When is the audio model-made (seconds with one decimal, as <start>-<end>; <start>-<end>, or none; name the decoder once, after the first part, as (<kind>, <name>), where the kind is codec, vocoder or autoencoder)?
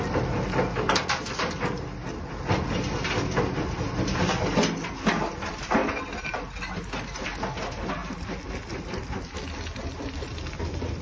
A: none